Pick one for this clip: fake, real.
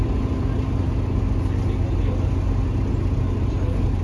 real